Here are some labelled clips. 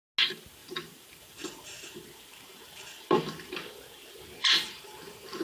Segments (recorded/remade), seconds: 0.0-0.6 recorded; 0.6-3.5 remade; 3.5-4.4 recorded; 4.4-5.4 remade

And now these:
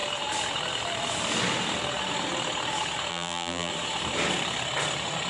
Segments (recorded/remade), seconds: 0.0-3.1 recorded; 3.1-3.7 remade; 3.7-5.3 recorded

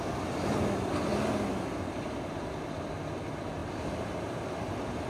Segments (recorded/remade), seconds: 0.0-5.1 recorded

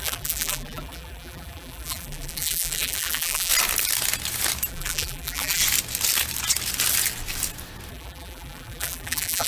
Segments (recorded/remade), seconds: 0.0-3.5 remade; 3.5-4.7 recorded; 4.7-5.6 remade; 5.6-7.9 recorded; 7.9-9.5 remade

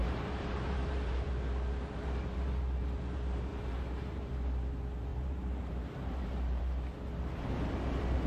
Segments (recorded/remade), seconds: 0.0-1.3 remade; 1.3-3.5 recorded; 3.5-4.3 remade; 4.3-5.1 recorded; 5.1-6.6 remade; 6.6-8.3 recorded

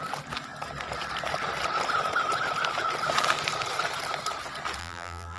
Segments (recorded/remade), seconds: 0.0-4.8 recorded; 4.8-5.4 remade

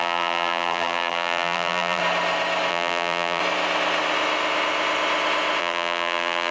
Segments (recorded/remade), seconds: 0.0-2.0 remade; 2.0-2.7 recorded; 2.7-3.4 remade; 3.4-5.6 recorded; 5.6-6.5 remade

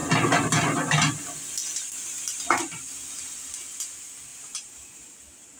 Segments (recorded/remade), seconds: 0.0-4.3 recorded; 4.3-5.1 remade; 5.1-5.6 recorded